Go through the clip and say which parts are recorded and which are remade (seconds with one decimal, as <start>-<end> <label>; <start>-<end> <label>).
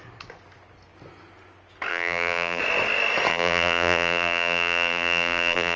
0.0-1.9 recorded; 1.9-2.6 remade; 2.6-3.3 recorded; 3.3-5.8 remade